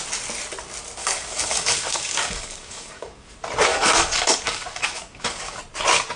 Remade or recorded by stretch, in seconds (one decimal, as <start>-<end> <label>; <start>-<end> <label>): 0.0-1.0 recorded; 1.0-3.3 remade; 3.3-3.7 recorded; 3.7-5.6 remade; 5.6-6.2 recorded